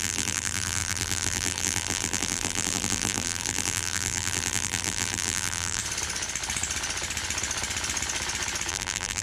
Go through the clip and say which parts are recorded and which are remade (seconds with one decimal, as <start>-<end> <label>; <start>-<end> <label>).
0.0-5.8 remade; 5.8-8.7 recorded; 8.7-9.2 remade